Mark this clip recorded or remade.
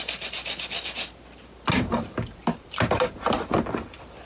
recorded